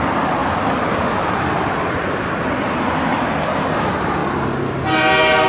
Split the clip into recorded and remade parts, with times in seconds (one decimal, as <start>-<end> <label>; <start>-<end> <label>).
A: 0.0-5.5 recorded